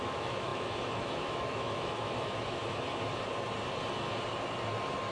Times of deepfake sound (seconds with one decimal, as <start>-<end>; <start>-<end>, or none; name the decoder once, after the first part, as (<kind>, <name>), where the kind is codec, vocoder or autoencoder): 0.0-2.6 (autoencoder, DAC-VAE)